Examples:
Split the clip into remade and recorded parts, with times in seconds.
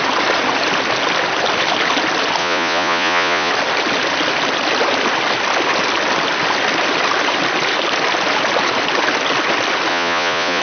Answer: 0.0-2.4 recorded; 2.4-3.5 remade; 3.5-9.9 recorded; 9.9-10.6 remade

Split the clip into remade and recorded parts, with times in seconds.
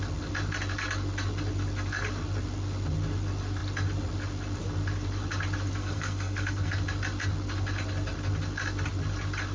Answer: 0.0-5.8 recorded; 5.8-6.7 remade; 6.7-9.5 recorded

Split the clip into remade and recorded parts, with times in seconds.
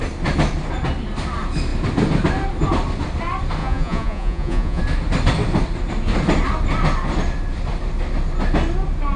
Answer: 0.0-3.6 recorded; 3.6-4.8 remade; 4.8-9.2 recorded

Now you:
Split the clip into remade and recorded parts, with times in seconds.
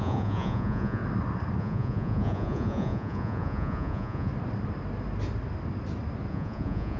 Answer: 0.0-1.0 remade; 1.0-1.6 recorded; 1.6-4.3 remade; 4.3-6.3 recorded; 6.3-7.0 remade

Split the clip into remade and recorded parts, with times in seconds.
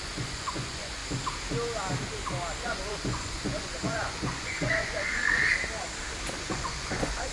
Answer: 0.0-1.0 remade; 1.0-2.6 recorded; 2.6-5.2 remade; 5.2-6.4 recorded; 6.4-7.3 remade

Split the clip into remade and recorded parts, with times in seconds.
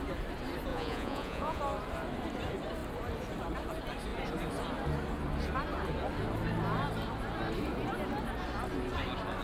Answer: 0.0-0.7 recorded; 0.7-1.6 remade; 1.6-9.4 recorded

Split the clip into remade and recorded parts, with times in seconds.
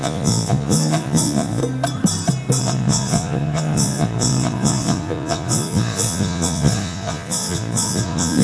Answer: 0.0-1.6 remade; 1.6-2.6 recorded; 2.6-8.4 remade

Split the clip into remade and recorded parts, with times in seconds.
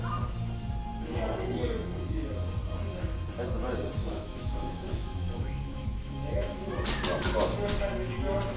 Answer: 0.0-4.0 recorded; 4.0-6.7 remade; 6.7-8.6 recorded